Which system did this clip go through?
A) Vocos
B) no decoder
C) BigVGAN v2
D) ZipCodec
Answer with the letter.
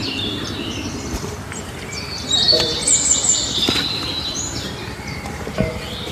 C